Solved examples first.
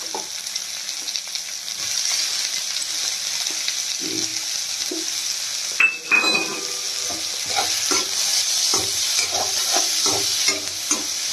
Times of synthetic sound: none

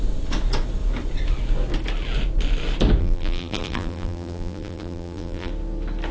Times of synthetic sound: 3.0-5.5 (vocoder, BigVGAN v2)

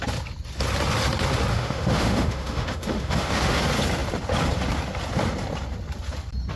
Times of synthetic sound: 1.5-3.6 (autoencoder, DAC-VAE)

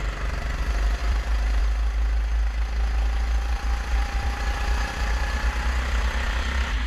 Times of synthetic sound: 1.0-1.6 (vocoder, BigVGAN v2); 3.9-4.9

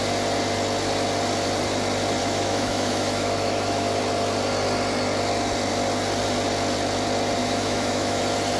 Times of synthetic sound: 2.2-4.0 (autoencoder, DAC-VAE); 7.4-8.2

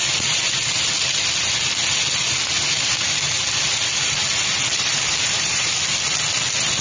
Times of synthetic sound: 4.9-5.7 (vocoder, BigVGAN v2)